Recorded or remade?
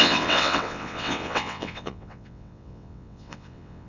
remade